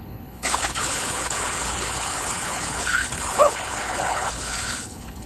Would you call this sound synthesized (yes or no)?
yes